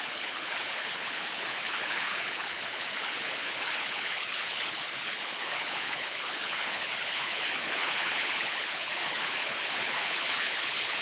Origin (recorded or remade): remade